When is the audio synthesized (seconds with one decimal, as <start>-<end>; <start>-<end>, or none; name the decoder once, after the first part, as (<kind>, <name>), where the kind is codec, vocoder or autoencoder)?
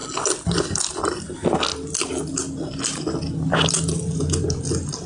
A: none